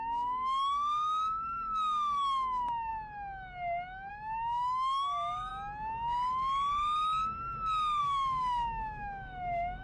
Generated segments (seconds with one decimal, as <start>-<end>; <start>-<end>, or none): 0.0-2.9; 4.1-5.5; 8.0-9.8